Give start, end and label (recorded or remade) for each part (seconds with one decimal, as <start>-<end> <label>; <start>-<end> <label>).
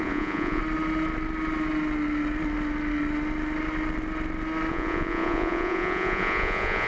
0.0-0.6 remade; 0.6-4.7 recorded; 4.7-6.9 remade